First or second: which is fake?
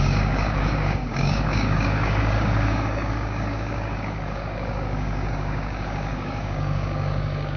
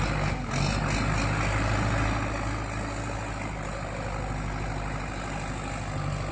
first